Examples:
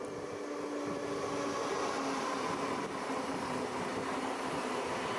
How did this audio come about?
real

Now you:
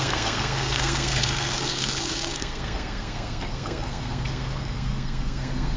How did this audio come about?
fake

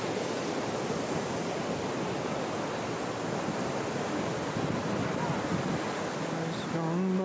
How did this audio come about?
real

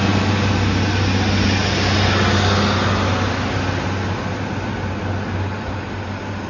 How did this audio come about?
real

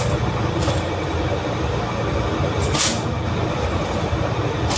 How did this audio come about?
real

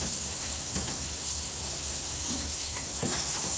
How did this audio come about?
fake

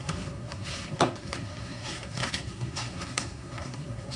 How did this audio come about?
fake